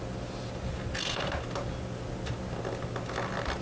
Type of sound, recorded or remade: recorded